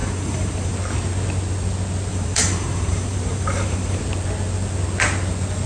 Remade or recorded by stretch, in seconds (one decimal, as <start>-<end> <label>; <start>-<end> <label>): 0.0-0.7 remade; 0.7-2.1 recorded; 2.1-4.0 remade; 4.0-5.7 recorded